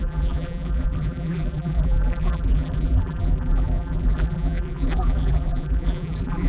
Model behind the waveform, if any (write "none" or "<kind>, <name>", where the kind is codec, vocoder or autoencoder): vocoder, BigVGAN v2